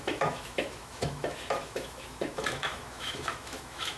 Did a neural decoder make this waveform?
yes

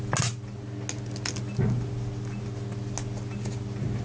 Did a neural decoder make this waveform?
no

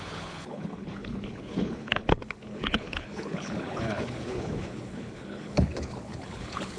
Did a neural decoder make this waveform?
yes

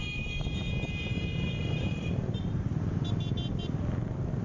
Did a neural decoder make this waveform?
no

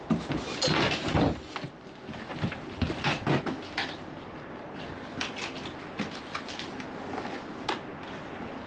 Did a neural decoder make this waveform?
no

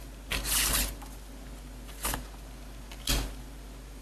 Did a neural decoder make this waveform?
no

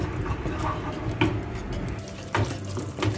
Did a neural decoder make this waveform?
no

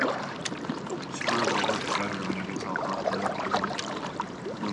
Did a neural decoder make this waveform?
yes